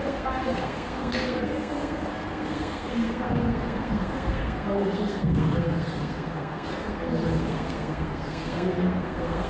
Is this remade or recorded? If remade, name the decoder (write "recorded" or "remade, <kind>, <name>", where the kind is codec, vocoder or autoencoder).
remade, codec, SNAC